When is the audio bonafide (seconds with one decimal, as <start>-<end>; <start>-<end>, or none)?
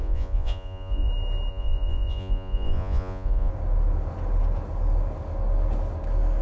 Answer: 1.1-1.5; 3.5-6.4